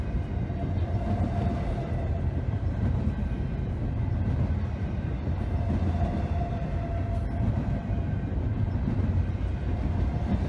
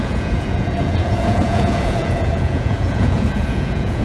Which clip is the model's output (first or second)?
second